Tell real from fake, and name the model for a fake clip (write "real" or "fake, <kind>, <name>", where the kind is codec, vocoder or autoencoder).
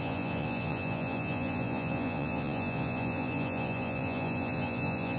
fake, vocoder, Vocos